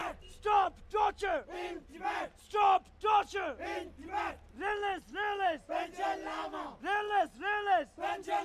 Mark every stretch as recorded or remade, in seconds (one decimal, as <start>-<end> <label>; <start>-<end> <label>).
0.0-8.4 recorded